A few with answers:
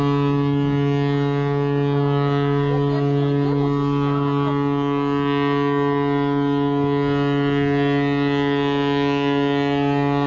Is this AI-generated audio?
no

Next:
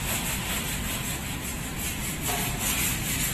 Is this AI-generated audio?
no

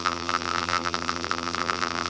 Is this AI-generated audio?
yes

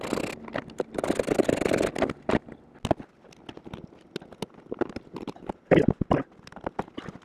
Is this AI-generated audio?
no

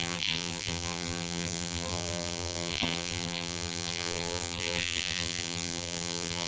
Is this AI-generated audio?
yes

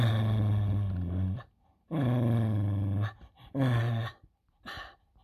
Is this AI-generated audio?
no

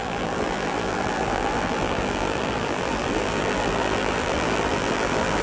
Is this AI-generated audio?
yes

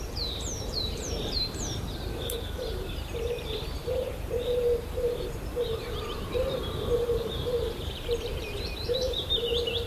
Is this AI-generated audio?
yes